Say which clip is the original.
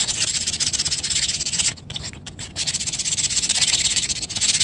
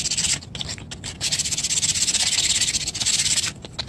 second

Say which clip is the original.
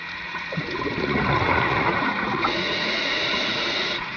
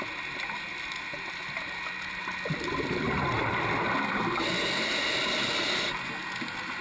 second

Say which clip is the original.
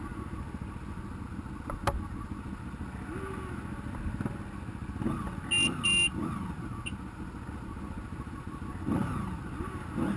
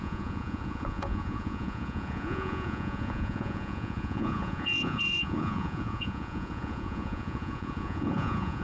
first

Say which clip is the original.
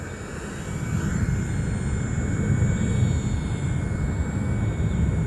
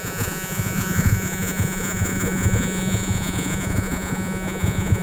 first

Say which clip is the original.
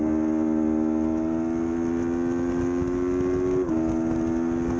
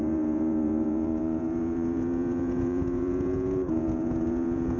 first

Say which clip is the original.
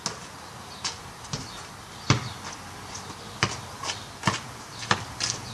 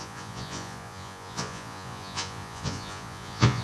first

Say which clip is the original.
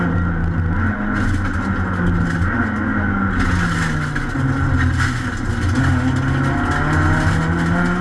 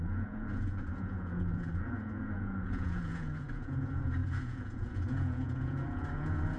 first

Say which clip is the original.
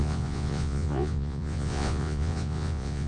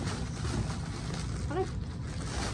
second